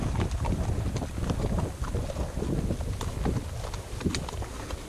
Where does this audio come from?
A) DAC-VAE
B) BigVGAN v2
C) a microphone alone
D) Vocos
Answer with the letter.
C